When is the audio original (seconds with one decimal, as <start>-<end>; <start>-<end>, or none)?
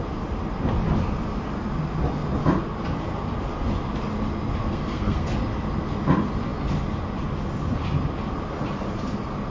0.0-4.6; 5.3-9.5